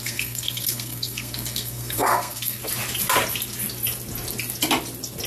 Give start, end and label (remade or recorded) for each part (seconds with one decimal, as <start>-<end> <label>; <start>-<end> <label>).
0.0-2.6 remade; 2.6-5.3 recorded

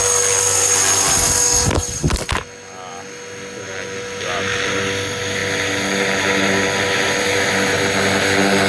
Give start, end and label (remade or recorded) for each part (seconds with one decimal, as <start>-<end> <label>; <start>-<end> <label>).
0.0-8.7 recorded

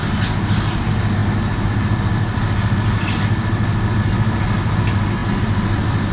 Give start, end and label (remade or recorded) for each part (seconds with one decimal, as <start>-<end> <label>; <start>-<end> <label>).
0.0-6.1 recorded

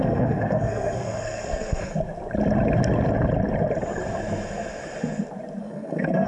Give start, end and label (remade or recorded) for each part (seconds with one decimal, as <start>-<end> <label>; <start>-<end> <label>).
0.0-1.9 remade; 1.9-5.6 recorded; 5.6-6.3 remade

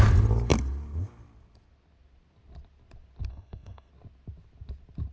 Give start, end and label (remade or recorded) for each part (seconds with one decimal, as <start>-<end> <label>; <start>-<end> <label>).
0.0-3.3 recorded; 3.3-3.9 remade; 3.9-5.1 recorded